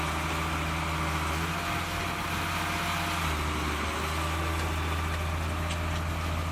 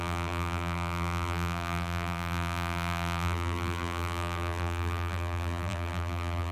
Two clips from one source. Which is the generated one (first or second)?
second